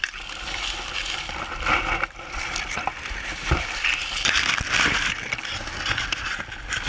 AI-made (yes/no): no